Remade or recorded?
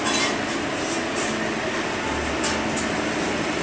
recorded